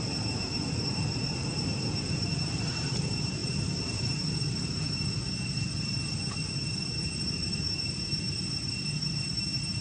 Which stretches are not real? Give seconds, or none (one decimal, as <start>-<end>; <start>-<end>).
0.0-2.3; 3.0-3.4; 7.2-9.8